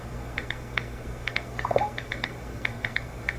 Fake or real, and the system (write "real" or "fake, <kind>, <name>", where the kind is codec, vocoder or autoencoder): fake, codec, SNAC